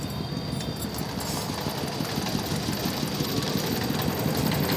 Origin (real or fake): real